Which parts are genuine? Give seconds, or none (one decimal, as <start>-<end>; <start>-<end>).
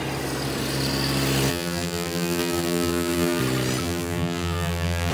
0.0-1.5; 3.4-3.8